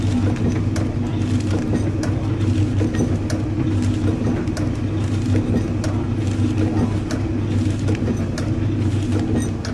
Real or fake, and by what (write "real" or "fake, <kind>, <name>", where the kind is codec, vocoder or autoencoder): real